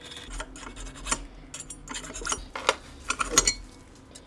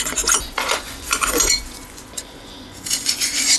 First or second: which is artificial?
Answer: second